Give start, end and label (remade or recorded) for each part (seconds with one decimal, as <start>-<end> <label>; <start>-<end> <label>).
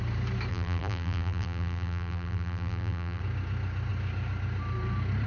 0.0-0.5 recorded; 0.5-3.2 remade; 3.2-5.3 recorded